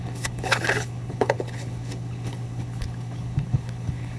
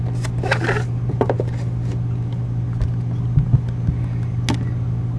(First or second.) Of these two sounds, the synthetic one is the first